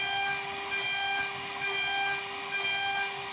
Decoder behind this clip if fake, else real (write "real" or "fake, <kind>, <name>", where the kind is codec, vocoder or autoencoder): real